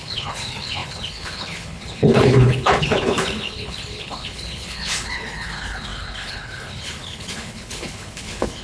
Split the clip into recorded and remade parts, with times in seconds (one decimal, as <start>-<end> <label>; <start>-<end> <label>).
0.0-8.6 remade